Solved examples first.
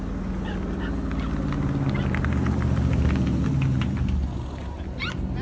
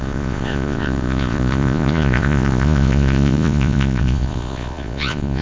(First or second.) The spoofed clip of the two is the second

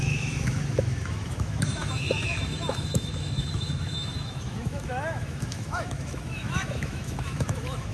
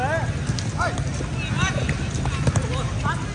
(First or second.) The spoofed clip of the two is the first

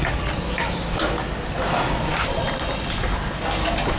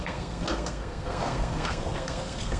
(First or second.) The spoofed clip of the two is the second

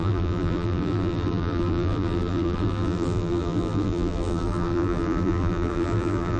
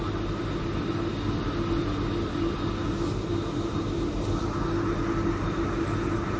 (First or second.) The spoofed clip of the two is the first